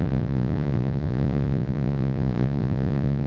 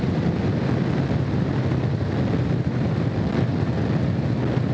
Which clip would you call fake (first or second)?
first